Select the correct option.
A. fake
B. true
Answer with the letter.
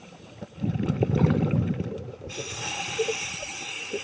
A